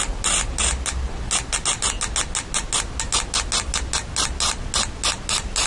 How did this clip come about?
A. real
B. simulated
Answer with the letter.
A